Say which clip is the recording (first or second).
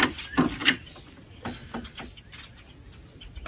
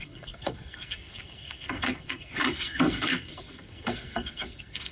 first